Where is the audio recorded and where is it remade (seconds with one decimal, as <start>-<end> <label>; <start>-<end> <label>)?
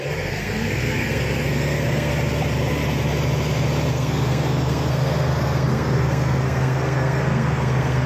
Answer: 0.0-2.1 remade; 2.1-3.9 recorded; 3.9-8.1 remade